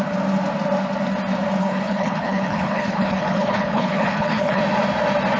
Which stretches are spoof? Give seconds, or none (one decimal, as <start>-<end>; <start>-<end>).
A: 1.6-4.6